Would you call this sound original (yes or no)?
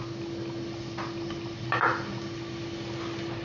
yes